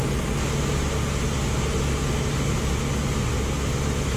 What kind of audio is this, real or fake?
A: real